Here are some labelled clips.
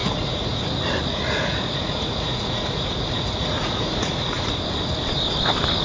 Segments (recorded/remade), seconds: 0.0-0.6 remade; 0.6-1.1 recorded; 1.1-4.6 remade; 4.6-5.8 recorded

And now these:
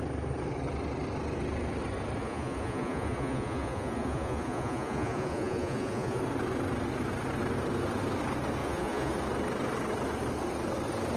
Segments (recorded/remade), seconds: 0.0-2.2 recorded; 2.2-6.2 remade; 6.2-8.6 recorded; 8.6-9.1 remade; 9.1-11.2 recorded

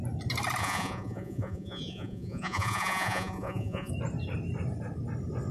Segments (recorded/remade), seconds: 0.0-0.6 recorded; 0.6-3.9 remade; 3.9-5.5 recorded

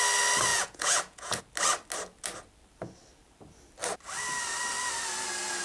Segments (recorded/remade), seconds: 0.0-0.5 recorded; 0.5-1.4 remade; 1.4-5.6 recorded

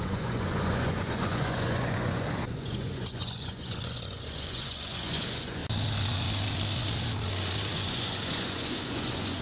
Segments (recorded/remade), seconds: 0.0-5.6 remade; 5.6-7.7 recorded; 7.7-9.4 remade

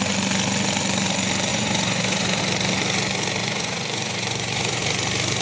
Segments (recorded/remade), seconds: 0.0-1.5 recorded; 1.5-2.4 remade; 2.4-3.4 recorded; 3.4-4.8 remade; 4.8-5.4 recorded

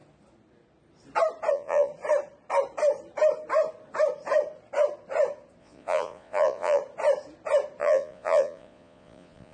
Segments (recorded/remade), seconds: 0.0-1.5 recorded; 1.5-1.9 remade; 1.9-5.6 recorded; 5.6-6.8 remade; 6.8-7.8 recorded; 7.8-9.5 remade

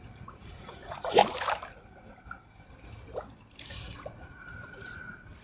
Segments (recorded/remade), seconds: 0.0-1.2 remade; 1.2-3.7 recorded; 3.7-5.4 remade